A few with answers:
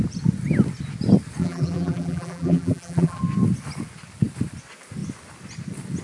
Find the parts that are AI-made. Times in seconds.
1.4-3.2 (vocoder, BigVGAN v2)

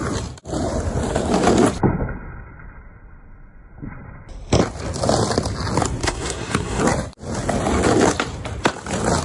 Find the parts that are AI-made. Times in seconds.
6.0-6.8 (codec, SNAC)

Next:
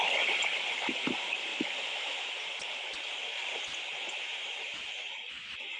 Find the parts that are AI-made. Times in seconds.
1.5-2.3 (autoencoder, DAC-VAE)

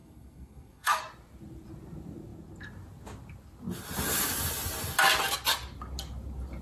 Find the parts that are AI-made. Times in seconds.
0.0-1.0 (codec, SNAC)

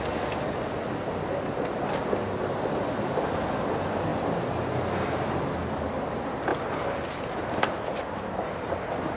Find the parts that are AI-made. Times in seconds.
none

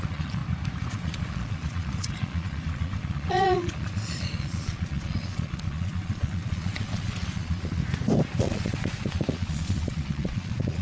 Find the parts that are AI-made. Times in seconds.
0.0-0.4 (vocoder, Vocos); 0.9-7.8; 8.4-10.8